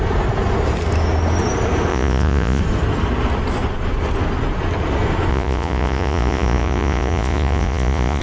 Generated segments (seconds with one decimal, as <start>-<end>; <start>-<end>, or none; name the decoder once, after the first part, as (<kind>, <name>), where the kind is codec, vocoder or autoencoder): 1.9-2.6 (vocoder, Vocos); 5.3-8.2